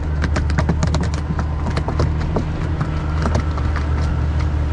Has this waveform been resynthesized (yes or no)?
no